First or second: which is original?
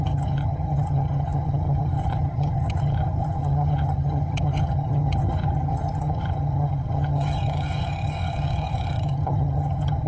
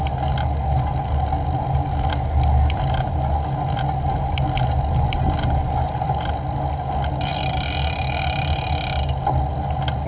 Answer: second